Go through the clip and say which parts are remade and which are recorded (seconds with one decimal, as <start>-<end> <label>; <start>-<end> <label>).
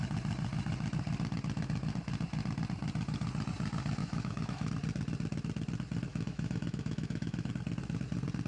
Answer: 0.0-4.0 recorded; 4.0-4.7 remade; 4.7-6.1 recorded; 6.1-7.5 remade; 7.5-8.5 recorded